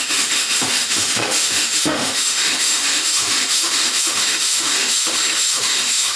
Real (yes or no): no